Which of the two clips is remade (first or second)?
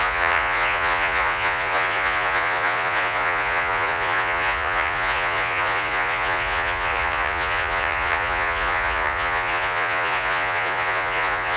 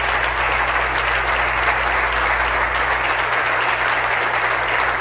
first